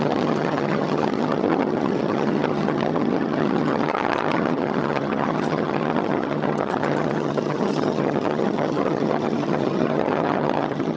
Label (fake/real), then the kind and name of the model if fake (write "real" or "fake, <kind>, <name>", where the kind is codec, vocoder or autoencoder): fake, vocoder, HiFi-GAN